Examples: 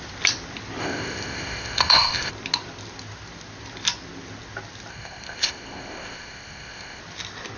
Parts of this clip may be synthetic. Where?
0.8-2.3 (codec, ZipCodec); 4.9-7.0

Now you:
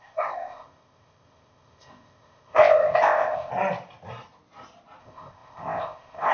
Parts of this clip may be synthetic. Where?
0.0-3.5 (codec, ZipCodec); 5.0-6.3

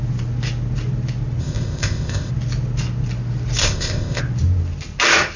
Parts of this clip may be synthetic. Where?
1.4-2.3 (codec, ZipCodec); 3.6-4.2